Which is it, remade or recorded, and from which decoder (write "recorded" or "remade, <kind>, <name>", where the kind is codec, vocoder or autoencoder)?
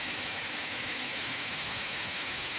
remade, autoencoder, DAC-VAE